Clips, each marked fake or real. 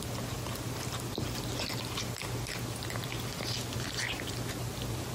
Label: real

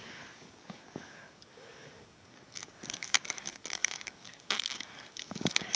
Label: fake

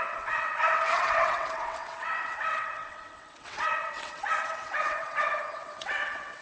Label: fake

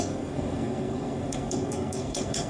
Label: fake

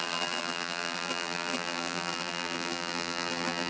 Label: fake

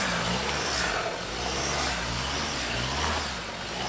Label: real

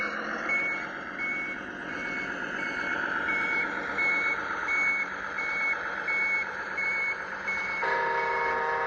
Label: fake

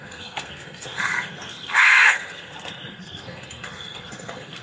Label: fake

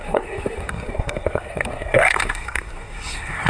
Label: fake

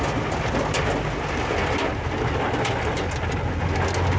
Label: real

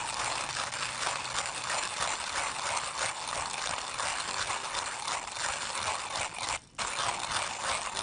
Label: real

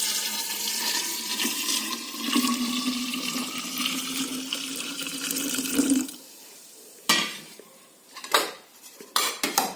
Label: fake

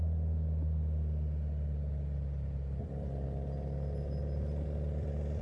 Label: real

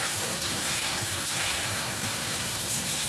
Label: fake